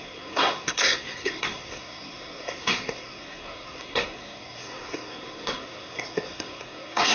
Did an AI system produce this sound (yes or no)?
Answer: yes